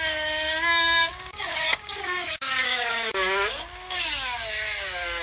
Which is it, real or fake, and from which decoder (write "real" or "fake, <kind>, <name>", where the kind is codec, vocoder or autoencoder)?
fake, codec, DAC